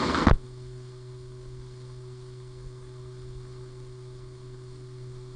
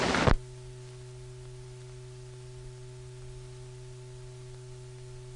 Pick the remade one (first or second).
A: first